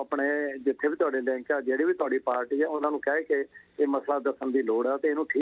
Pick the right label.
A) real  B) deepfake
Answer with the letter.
A